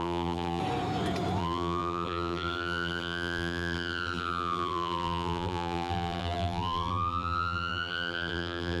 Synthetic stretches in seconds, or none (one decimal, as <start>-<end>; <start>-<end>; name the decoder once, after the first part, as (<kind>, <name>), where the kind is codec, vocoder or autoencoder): 0.0-0.6 (vocoder, BigVGAN v2); 1.4-8.8